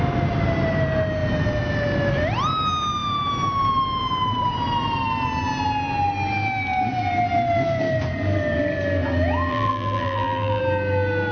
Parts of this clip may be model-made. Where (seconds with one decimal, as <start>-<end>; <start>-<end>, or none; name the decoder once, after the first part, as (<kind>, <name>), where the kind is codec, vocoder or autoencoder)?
9.5-10.6 (vocoder, BigVGAN v2)